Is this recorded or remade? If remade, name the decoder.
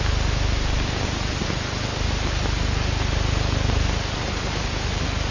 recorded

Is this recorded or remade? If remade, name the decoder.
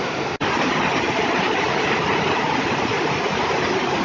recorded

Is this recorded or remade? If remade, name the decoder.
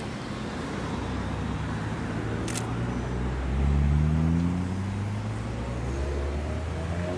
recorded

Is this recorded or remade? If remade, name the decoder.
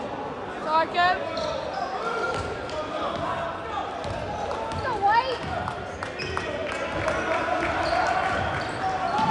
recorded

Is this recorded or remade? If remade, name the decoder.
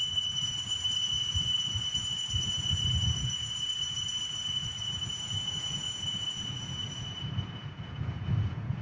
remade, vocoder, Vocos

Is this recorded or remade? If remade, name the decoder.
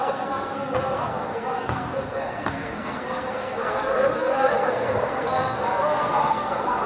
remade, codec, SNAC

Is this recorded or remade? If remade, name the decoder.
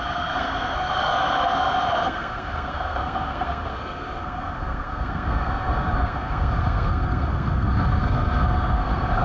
remade, codec, SNAC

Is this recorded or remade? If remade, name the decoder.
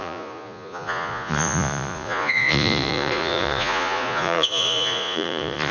remade, vocoder, Vocos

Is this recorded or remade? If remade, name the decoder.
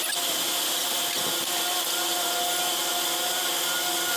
recorded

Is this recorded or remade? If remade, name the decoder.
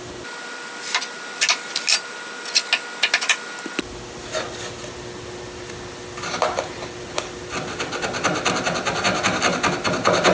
recorded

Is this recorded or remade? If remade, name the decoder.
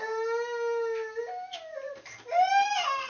recorded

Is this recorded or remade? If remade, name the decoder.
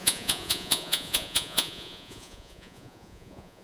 remade, vocoder, Vocos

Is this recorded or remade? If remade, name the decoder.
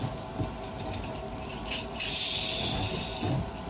recorded